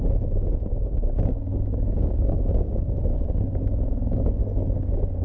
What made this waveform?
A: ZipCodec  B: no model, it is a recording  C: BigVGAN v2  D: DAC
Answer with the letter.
D